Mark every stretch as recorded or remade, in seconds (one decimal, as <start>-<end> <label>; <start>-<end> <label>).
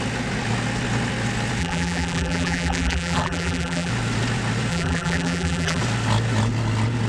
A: 0.0-1.6 recorded; 1.6-3.9 remade; 3.9-4.7 recorded; 4.7-5.8 remade; 5.8-7.1 recorded